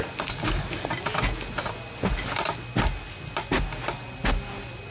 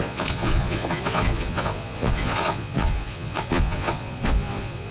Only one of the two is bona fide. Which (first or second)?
first